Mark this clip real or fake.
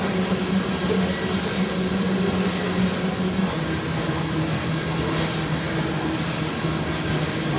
real